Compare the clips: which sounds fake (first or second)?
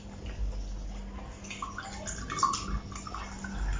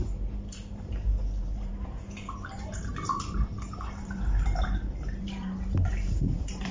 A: second